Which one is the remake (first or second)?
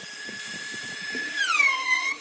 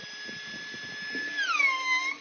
first